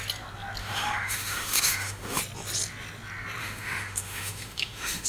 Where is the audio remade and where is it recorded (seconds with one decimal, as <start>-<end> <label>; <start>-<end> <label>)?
0.0-0.6 recorded; 0.6-2.2 remade; 2.2-3.4 recorded; 3.4-5.1 remade

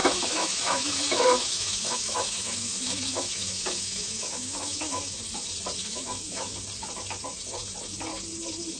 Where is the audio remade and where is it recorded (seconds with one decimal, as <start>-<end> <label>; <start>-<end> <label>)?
0.0-5.2 remade; 5.2-5.8 recorded; 5.8-6.6 remade; 6.6-8.8 recorded

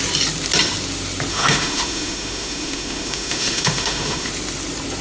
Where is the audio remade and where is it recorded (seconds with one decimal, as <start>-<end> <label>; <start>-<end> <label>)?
0.0-1.3 recorded; 1.3-4.3 remade; 4.3-5.0 recorded

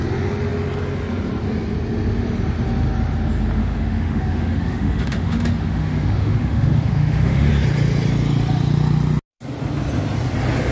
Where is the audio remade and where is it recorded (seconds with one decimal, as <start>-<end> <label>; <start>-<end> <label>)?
0.0-3.6 recorded; 3.6-7.5 remade; 7.5-10.7 recorded

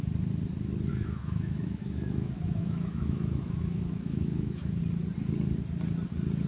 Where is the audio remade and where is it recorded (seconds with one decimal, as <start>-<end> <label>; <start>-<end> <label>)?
0.0-0.9 recorded; 0.9-4.8 remade; 4.8-6.5 recorded

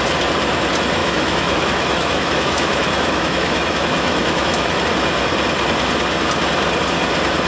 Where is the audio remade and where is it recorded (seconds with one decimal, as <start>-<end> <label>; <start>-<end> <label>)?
0.0-1.0 recorded; 1.0-4.8 remade; 4.8-7.5 recorded

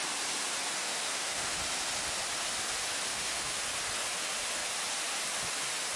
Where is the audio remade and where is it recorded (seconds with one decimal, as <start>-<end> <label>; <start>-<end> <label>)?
0.0-0.8 recorded; 0.8-1.6 remade; 1.6-3.1 recorded; 3.1-3.6 remade; 3.6-6.0 recorded